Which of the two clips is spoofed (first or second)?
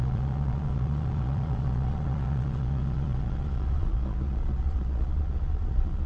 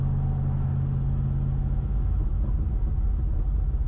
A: first